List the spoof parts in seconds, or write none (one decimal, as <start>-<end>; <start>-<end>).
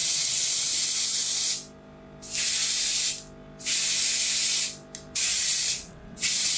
0.0-0.6; 5.3-6.6